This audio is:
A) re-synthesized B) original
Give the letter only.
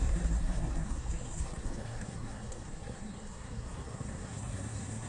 A